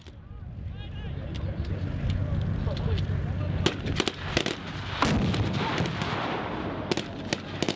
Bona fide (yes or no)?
yes